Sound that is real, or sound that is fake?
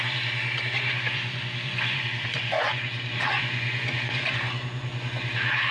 fake